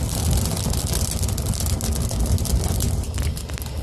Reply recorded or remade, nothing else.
recorded